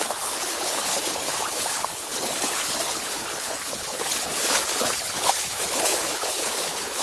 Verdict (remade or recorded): remade